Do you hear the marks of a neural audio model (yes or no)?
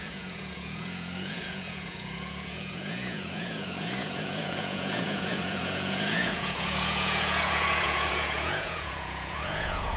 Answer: yes